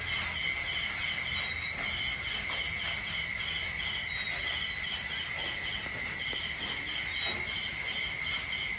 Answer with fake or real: real